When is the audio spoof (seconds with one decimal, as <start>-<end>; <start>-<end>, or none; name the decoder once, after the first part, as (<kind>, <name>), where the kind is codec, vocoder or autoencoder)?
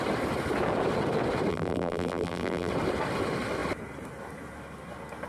1.5-2.7 (vocoder, BigVGAN v2)